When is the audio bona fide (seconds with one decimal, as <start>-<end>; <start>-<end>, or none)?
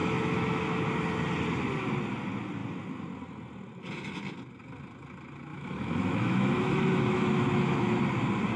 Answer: 0.8-5.5; 8.0-8.6